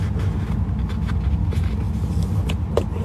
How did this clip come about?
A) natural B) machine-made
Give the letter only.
A